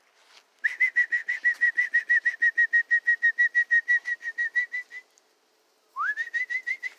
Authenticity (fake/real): real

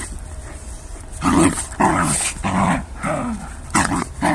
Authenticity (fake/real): real